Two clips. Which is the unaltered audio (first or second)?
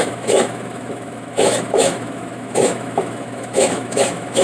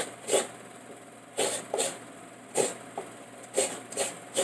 second